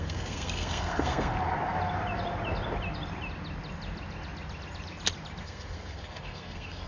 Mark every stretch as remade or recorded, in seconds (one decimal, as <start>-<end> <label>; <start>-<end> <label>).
0.0-1.3 remade; 1.3-5.4 recorded; 5.4-6.9 remade